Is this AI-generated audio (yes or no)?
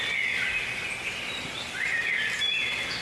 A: no